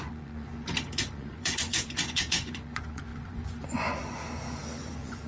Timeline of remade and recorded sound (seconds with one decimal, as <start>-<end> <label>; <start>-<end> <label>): 0.0-5.3 remade